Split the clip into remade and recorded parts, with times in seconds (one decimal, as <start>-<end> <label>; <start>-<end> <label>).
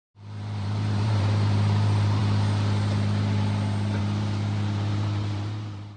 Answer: 0.0-2.2 remade; 2.2-4.0 recorded; 4.0-6.0 remade